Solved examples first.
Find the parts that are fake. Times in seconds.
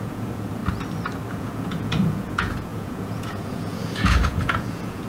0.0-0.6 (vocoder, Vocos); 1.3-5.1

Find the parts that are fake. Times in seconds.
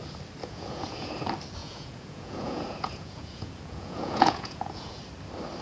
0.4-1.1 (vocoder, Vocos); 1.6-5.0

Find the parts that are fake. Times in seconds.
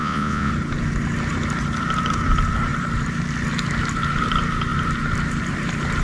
0.0-0.5 (vocoder, Vocos)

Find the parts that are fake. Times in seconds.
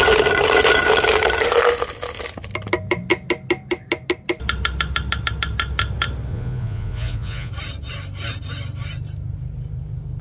6.3-7.5 (vocoder, Vocos)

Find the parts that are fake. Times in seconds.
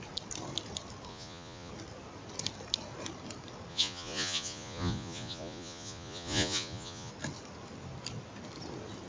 1.1-1.7 (vocoder, Vocos); 3.7-7.1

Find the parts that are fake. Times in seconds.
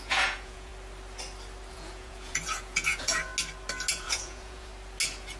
0.0-0.7 (vocoder, Vocos); 1.7-3.3; 3.9-4.7